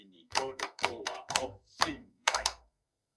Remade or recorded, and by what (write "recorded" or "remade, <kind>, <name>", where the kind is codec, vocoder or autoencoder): remade, codec, SNAC